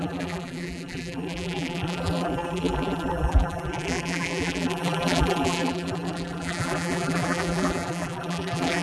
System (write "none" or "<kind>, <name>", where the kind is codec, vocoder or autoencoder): vocoder, BigVGAN v2